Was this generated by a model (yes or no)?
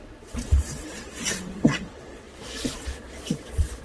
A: yes